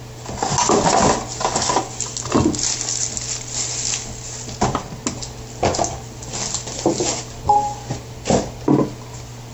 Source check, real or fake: real